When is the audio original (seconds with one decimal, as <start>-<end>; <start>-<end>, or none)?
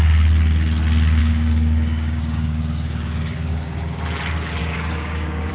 0.0-1.2; 4.0-4.6